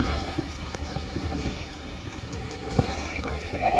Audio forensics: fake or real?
fake